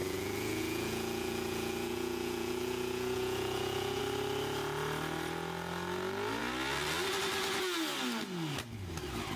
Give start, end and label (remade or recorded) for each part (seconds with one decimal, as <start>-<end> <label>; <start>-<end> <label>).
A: 0.0-4.0 remade; 4.0-9.4 recorded